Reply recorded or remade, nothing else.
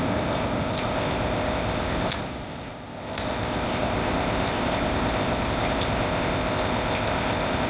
remade